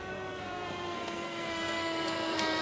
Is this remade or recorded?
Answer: remade